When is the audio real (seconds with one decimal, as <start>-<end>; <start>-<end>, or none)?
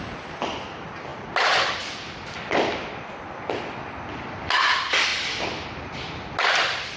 0.0-7.0